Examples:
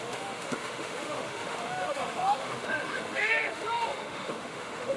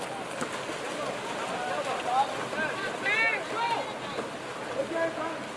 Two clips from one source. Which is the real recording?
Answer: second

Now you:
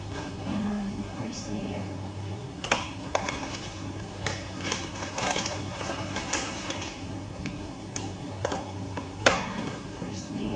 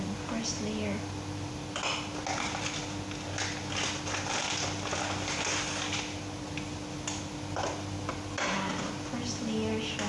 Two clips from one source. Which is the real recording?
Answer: second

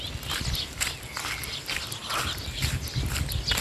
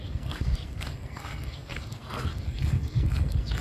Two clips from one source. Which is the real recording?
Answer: first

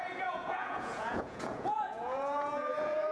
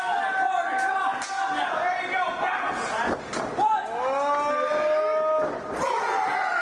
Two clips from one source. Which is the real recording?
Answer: second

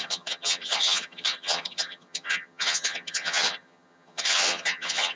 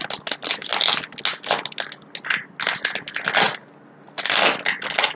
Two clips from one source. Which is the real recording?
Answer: second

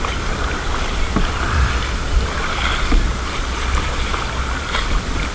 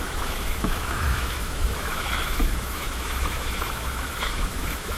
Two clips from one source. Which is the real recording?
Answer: first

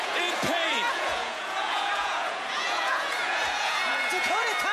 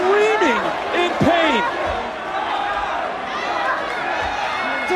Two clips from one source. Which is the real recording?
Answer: second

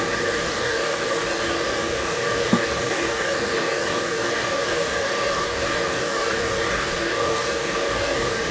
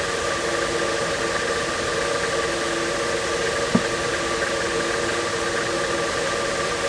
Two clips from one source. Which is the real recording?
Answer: second